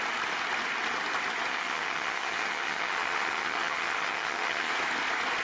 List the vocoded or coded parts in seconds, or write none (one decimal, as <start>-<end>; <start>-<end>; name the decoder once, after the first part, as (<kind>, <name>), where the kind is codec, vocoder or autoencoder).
1.5-4.7 (vocoder, HiFi-GAN)